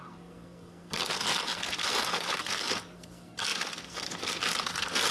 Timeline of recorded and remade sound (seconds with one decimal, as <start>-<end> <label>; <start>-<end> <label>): 0.0-5.1 remade